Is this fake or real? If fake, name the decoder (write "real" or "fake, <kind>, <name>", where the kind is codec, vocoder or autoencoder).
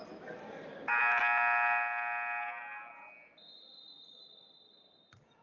real